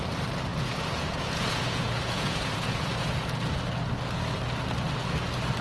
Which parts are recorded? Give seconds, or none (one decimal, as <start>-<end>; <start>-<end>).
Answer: 0.0-0.5; 3.5-5.6